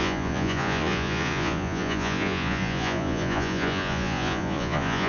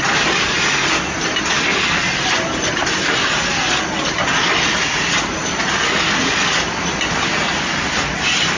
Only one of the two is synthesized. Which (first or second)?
first